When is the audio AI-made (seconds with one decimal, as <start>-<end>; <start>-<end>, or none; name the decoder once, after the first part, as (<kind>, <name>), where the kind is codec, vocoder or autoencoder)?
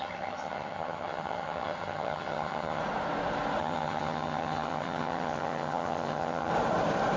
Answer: 0.0-2.8 (vocoder, HiFi-GAN); 3.6-6.5